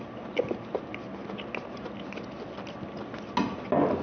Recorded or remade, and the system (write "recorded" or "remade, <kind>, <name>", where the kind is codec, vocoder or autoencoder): recorded